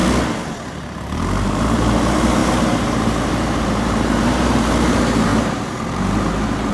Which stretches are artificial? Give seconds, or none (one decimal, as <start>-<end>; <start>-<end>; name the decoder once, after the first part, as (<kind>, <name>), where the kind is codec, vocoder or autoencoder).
0.7-6.7 (vocoder, BigVGAN v2)